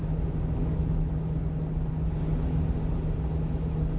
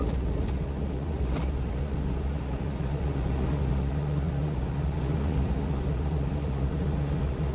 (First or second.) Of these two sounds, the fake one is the second